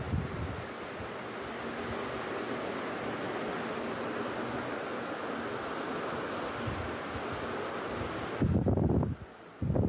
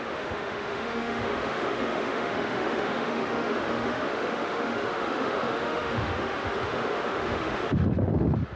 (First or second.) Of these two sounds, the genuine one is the first